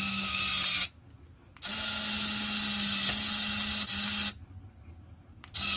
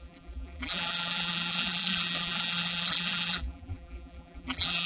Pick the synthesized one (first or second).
second